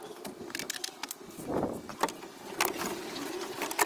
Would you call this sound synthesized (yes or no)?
no